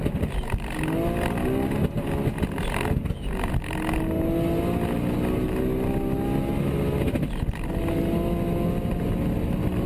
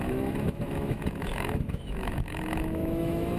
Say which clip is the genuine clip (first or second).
first